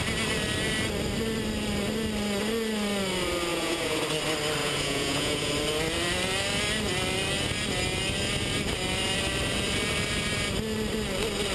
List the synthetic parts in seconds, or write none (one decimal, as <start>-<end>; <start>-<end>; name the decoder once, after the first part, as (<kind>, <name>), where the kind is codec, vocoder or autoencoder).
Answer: 3.5-4.0 (vocoder, Vocos); 4.6-5.5